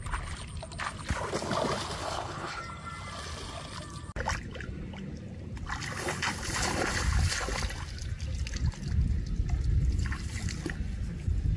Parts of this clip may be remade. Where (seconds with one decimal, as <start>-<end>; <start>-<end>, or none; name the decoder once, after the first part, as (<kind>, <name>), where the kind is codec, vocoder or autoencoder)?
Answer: 2.0-2.6 (codec, HILCodec)